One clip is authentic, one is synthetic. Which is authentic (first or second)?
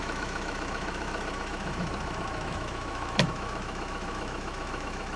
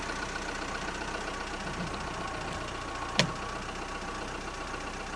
second